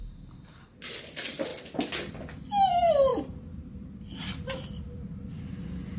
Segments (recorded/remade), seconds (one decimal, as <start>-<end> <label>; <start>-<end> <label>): 0.0-3.1 recorded; 3.1-4.0 remade; 4.0-6.0 recorded